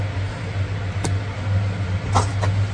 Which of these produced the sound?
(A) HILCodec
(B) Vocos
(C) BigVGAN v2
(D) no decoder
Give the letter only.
D